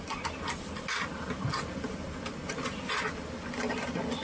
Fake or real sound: real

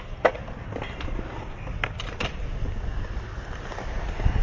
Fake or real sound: real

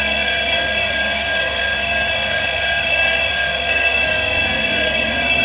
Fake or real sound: fake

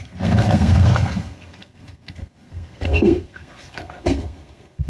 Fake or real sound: fake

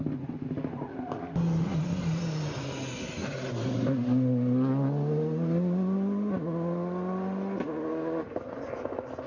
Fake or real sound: real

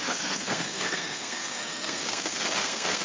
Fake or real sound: fake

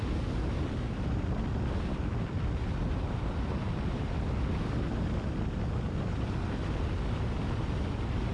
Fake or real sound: real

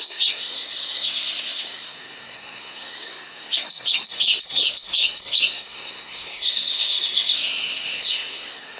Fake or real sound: fake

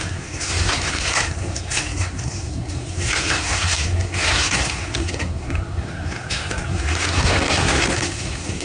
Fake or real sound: fake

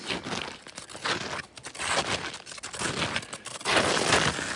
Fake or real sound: real